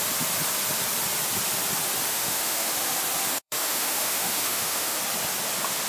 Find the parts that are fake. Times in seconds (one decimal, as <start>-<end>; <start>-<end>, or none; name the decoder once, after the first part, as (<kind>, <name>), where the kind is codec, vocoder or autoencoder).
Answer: 2.1-2.7 (autoencoder, DAC-VAE); 3.3-5.0